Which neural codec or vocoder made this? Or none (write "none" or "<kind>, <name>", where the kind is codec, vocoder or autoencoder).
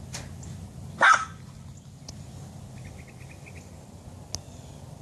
none